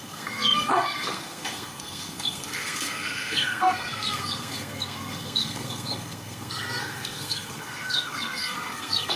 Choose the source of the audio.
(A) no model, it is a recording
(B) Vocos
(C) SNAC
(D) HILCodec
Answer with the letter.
C